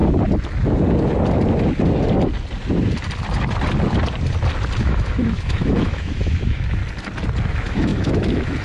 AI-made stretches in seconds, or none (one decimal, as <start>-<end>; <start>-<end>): 4.8-6.8; 7.5-8.6

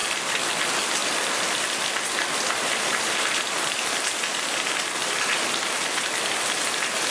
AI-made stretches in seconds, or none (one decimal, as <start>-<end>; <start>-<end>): 0.0-0.5; 1.0-5.3

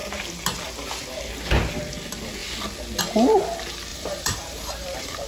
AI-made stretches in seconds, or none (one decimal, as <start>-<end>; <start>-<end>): 3.9-5.3

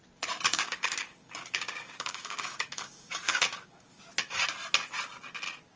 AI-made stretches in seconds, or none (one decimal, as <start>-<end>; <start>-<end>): 0.5-4.0

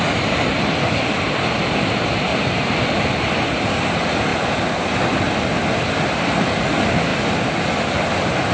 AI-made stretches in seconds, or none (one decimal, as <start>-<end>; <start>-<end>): 0.0-2.3; 3.6-8.5